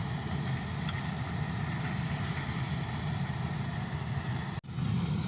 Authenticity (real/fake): real